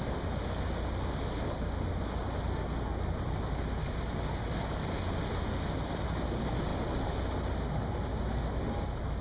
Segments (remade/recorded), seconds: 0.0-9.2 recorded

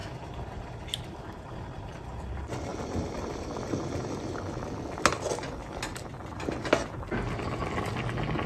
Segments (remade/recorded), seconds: 0.0-2.3 remade; 2.3-2.7 recorded; 2.7-4.4 remade; 4.4-8.5 recorded

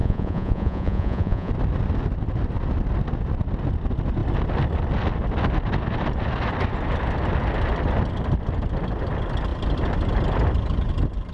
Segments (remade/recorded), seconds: 0.0-1.5 remade; 1.5-11.3 recorded